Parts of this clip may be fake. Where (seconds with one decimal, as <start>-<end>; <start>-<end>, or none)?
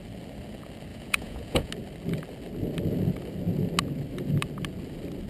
0.9-1.7